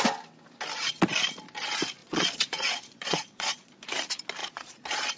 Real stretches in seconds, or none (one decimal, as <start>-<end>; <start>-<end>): 0.0-2.0; 3.7-4.4